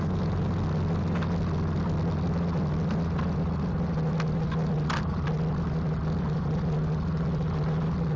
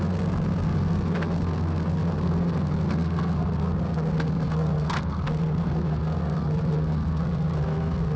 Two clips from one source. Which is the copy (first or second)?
second